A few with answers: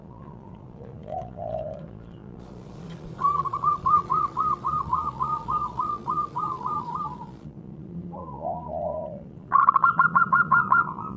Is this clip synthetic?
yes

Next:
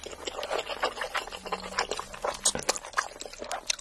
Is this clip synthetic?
no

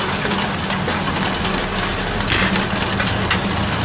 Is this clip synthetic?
no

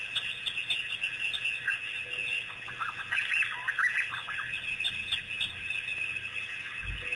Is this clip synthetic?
no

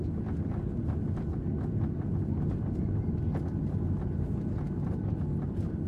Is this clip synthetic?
no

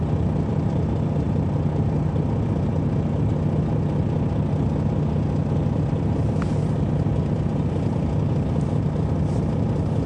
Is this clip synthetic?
no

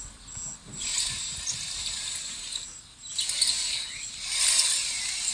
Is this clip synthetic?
no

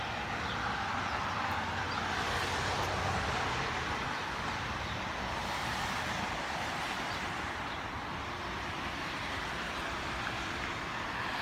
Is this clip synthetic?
no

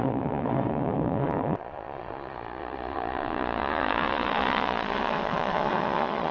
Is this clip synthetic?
yes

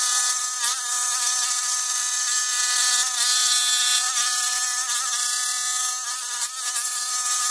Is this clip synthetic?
no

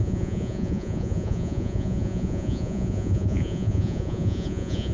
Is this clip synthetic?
yes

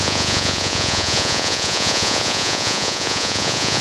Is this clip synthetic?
yes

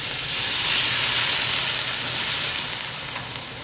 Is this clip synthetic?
no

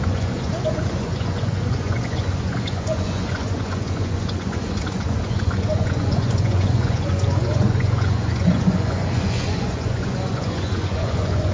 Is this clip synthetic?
yes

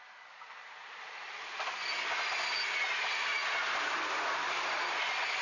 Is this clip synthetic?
no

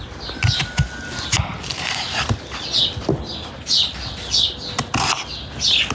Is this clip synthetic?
no